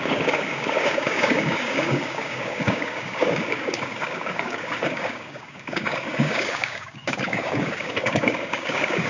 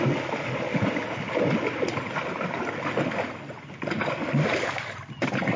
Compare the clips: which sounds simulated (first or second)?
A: first